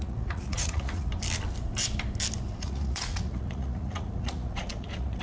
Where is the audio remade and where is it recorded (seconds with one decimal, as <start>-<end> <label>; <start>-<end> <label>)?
0.0-1.1 remade; 1.1-2.5 recorded; 2.5-5.2 remade

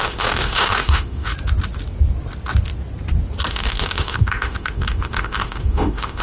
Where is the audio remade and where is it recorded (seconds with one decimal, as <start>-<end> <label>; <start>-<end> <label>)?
0.0-1.3 remade; 1.3-3.5 recorded; 3.5-6.2 remade

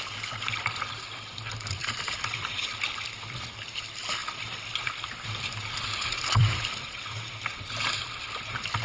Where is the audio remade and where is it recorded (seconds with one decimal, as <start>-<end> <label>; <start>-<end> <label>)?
0.0-1.8 recorded; 1.8-2.5 remade; 2.5-4.2 recorded; 4.2-8.8 remade

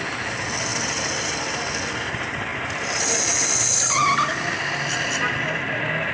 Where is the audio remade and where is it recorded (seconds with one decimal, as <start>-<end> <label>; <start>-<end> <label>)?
0.0-2.5 recorded; 2.5-3.1 remade; 3.1-6.1 recorded

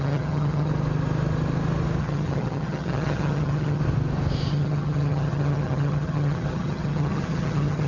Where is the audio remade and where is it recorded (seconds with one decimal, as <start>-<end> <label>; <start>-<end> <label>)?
0.0-0.7 remade; 0.7-2.0 recorded; 2.0-3.8 remade; 3.8-4.5 recorded; 4.5-7.9 remade

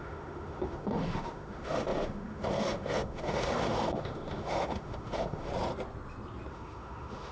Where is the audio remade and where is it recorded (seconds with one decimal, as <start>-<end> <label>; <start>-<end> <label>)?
0.0-5.5 remade; 5.5-6.5 recorded; 6.5-7.3 remade

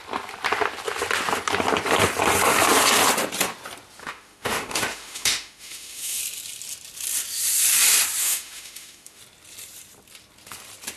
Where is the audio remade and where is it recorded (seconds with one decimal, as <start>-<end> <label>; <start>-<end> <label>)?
0.0-4.0 recorded; 4.0-6.2 remade; 6.2-8.2 recorded; 8.2-9.2 remade; 9.2-11.0 recorded

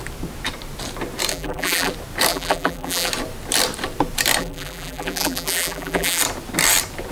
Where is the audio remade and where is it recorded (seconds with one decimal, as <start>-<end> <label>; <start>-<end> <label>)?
0.0-1.3 recorded; 1.3-1.9 remade; 1.9-2.3 recorded; 2.3-3.1 remade; 3.1-4.4 recorded; 4.4-6.2 remade; 6.2-7.1 recorded